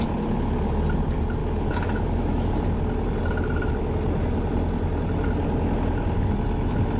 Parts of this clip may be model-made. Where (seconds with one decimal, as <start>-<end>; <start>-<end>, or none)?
1.4-2.5